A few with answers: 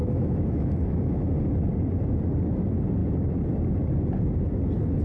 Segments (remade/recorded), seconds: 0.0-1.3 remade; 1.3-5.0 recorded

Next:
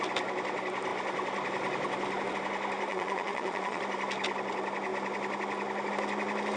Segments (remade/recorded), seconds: 0.0-2.9 recorded; 2.9-3.8 remade; 3.8-6.6 recorded

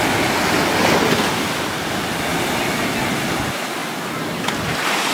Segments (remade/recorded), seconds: 0.0-5.1 recorded

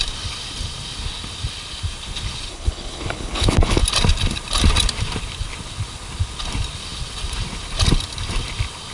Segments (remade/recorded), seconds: 0.0-2.5 recorded; 2.5-3.8 remade; 3.8-8.9 recorded